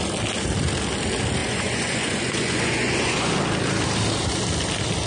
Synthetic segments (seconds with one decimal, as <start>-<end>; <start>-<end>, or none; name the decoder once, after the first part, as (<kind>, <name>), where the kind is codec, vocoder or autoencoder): 1.4-3.3 (vocoder, Vocos)